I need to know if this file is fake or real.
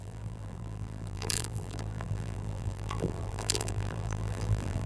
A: fake